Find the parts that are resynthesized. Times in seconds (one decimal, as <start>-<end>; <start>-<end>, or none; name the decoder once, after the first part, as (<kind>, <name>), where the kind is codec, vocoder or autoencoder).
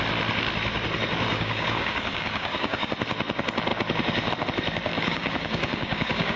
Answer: 1.3-2.9 (codec, DAC); 4.9-6.4